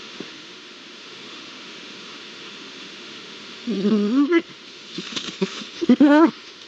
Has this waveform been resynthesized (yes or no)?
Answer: yes